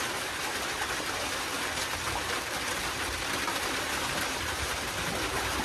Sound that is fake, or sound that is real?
real